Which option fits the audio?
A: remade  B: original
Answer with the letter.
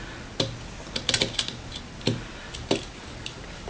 B